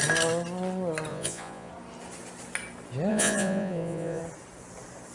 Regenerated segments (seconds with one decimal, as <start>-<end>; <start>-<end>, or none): 1.1-1.7; 3.1-4.2